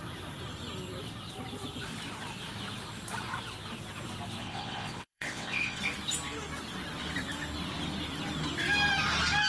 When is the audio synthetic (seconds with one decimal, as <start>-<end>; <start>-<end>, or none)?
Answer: 4.4-5.8